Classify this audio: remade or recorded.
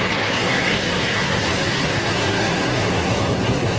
remade